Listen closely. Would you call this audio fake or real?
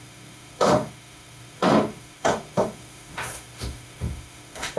fake